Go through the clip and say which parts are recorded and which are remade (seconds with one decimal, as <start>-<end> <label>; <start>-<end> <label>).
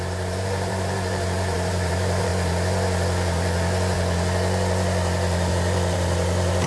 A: 0.0-2.3 remade; 2.3-5.5 recorded; 5.5-6.7 remade